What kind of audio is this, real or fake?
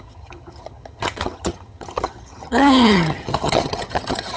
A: fake